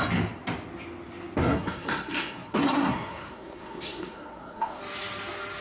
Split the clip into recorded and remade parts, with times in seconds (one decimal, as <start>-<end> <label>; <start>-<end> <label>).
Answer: 0.0-1.4 recorded; 1.4-4.8 remade; 4.8-5.6 recorded